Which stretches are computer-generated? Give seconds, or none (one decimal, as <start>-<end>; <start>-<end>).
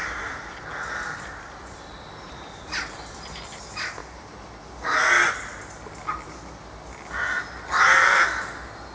0.0-3.6